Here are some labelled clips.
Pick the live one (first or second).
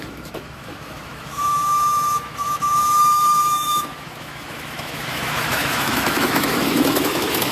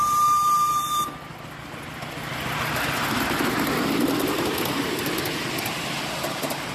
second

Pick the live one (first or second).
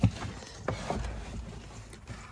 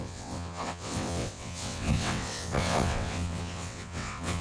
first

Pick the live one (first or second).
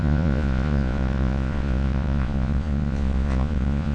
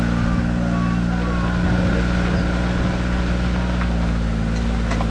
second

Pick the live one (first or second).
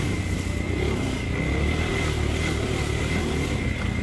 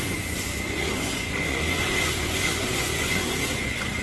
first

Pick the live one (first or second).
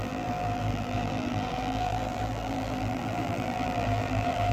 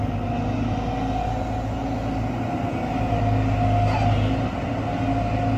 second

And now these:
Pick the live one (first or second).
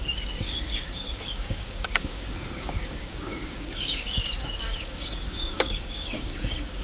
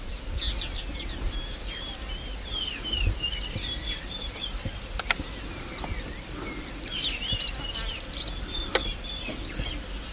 second